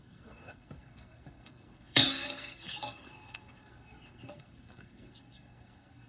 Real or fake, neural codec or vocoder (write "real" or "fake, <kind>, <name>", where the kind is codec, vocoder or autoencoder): fake, codec, SNAC